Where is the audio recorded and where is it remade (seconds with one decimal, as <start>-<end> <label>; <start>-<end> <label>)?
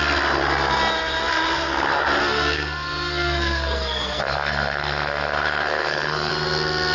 0.0-2.2 recorded; 2.2-6.3 remade; 6.3-6.9 recorded